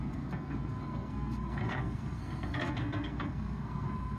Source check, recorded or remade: remade